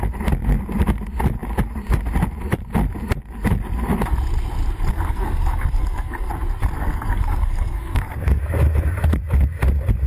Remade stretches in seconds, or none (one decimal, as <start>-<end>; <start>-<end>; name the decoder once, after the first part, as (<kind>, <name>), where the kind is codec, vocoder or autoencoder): 4.9-6.3 (codec, SNAC); 6.8-8.4